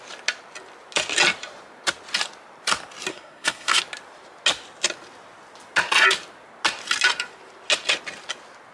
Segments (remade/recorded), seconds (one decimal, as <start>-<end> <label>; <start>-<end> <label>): 0.0-3.1 recorded; 3.1-3.8 remade; 3.8-8.7 recorded